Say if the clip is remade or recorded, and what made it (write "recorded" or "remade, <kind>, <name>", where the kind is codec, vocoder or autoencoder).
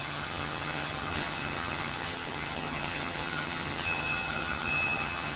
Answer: remade, vocoder, HiFi-GAN